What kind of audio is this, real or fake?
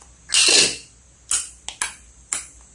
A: real